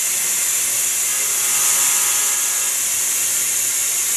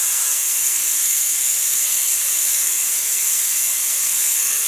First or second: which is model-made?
second